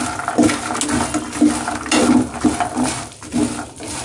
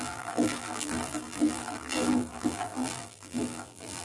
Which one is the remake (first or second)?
second